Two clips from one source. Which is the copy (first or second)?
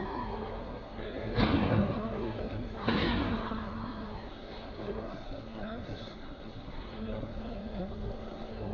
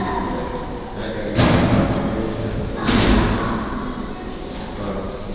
first